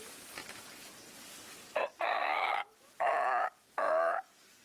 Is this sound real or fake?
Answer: real